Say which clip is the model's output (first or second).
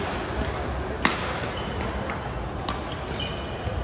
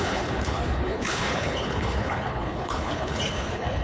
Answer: second